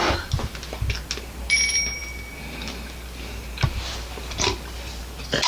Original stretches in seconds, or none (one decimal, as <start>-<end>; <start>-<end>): 0.0-5.5